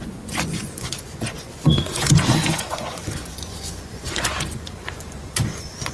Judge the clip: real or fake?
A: fake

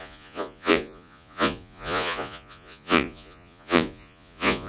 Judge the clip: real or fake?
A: fake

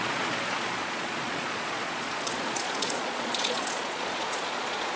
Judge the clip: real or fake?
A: fake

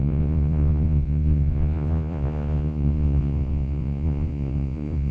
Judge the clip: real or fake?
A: fake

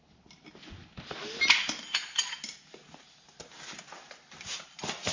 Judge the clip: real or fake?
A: real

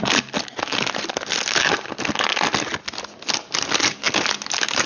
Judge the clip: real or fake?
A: real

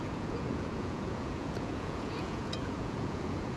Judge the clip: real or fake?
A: fake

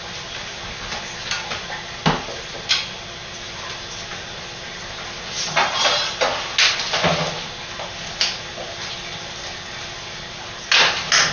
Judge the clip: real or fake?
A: real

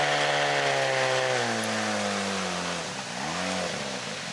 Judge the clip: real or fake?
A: real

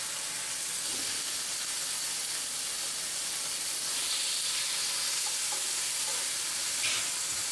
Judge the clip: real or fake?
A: real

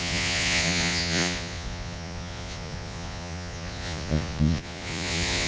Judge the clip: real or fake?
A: fake